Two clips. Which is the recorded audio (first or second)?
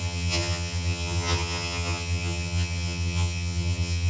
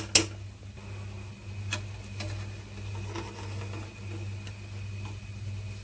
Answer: second